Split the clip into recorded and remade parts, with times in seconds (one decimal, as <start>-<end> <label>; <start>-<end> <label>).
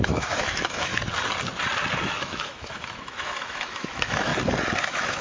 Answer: 0.0-0.9 remade; 0.9-2.0 recorded; 2.0-4.3 remade; 4.3-4.8 recorded; 4.8-5.2 remade